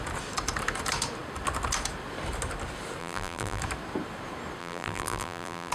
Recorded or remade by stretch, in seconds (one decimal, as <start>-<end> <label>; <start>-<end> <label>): 0.0-3.0 recorded; 3.0-3.6 remade; 3.6-4.6 recorded; 4.6-5.7 remade

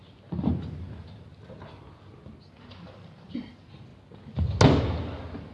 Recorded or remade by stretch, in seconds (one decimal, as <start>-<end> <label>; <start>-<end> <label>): 0.0-5.5 recorded

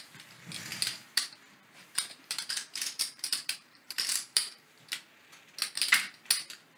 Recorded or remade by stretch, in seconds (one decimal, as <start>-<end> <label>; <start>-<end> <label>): 0.0-0.7 recorded; 0.7-4.8 remade; 4.8-6.8 recorded

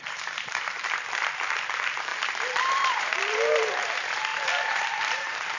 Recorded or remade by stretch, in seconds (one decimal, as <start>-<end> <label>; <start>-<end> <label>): 0.0-5.6 remade

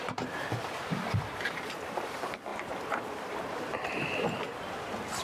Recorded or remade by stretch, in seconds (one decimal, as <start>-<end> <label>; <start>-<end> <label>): 0.0-2.5 remade; 2.5-3.3 recorded; 3.3-5.2 remade